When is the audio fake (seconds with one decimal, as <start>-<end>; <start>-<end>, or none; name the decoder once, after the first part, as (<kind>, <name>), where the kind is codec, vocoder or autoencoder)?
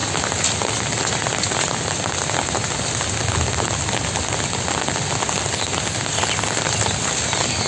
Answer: none